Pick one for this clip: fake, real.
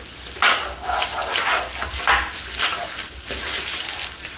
real